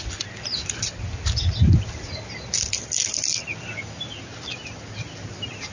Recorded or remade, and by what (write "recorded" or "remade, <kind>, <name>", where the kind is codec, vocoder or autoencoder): recorded